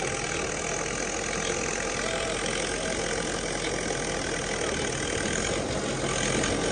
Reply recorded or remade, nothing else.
recorded